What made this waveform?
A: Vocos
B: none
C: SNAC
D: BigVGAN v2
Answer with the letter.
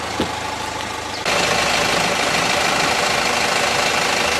B